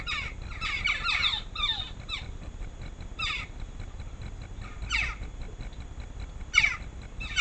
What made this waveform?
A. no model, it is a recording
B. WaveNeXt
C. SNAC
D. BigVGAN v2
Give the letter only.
A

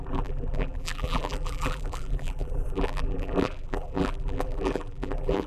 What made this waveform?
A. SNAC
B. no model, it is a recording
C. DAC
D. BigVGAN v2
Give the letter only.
D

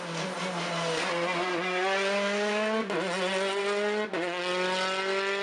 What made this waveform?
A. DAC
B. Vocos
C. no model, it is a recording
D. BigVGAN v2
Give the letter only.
C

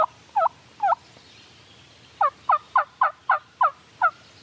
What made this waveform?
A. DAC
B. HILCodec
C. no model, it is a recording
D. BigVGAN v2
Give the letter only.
C